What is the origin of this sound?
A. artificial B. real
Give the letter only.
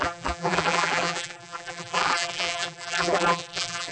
A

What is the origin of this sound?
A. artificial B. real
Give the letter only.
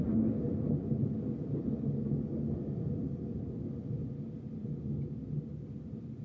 B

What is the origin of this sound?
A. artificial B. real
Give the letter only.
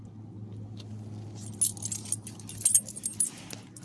B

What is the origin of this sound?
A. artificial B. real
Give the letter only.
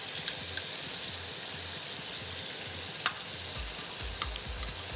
B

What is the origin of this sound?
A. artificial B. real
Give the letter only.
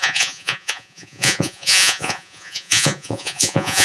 A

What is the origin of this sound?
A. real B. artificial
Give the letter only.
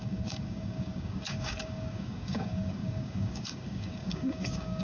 B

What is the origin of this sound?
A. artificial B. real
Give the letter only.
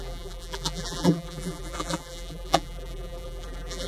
A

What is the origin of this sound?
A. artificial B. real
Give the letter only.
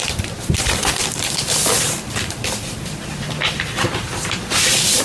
A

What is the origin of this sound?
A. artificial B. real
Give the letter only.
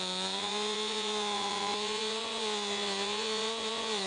A